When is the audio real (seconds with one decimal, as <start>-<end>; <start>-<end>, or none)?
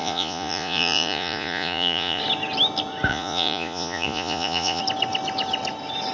2.2-3.1; 4.8-6.1